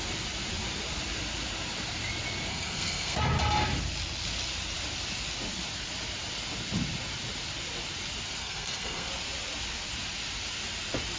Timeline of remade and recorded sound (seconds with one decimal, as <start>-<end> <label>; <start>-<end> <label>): 0.0-2.5 recorded; 2.5-3.3 remade; 3.3-8.4 recorded; 8.4-9.1 remade; 9.1-11.2 recorded